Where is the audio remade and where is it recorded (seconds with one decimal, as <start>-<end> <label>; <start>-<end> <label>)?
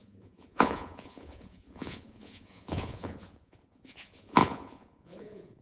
0.0-5.6 remade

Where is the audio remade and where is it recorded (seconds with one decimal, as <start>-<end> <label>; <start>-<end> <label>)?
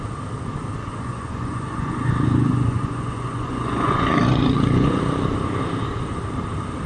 0.0-0.9 recorded; 0.9-5.0 remade; 5.0-6.9 recorded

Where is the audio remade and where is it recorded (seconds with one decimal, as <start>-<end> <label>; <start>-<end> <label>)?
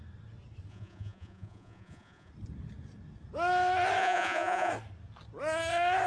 0.0-0.7 recorded; 0.7-2.3 remade; 2.3-4.0 recorded; 4.0-4.7 remade; 4.7-6.1 recorded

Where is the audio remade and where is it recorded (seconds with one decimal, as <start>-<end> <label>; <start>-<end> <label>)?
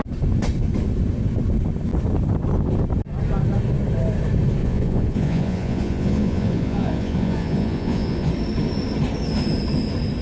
0.0-4.6 recorded; 4.6-8.3 remade; 8.3-10.2 recorded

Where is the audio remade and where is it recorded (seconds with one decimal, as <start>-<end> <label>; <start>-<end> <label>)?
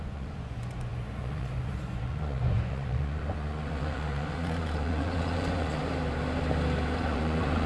0.0-5.8 remade; 5.8-7.0 recorded; 7.0-7.7 remade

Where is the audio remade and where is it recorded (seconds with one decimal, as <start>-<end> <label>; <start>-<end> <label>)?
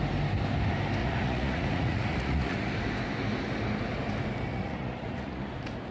0.0-1.0 recorded; 1.0-2.7 remade; 2.7-4.5 recorded; 4.5-5.4 remade; 5.4-5.9 recorded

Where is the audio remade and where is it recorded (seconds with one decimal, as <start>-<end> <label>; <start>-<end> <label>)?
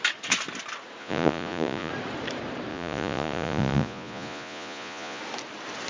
0.0-1.0 recorded; 1.0-1.9 remade; 1.9-2.7 recorded; 2.7-5.2 remade; 5.2-5.9 recorded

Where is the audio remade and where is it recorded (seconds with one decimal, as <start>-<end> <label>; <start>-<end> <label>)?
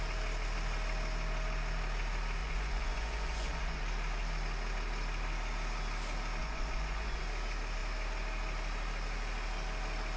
0.0-2.4 recorded; 2.4-3.8 remade; 3.8-6.4 recorded; 6.4-7.2 remade; 7.2-10.2 recorded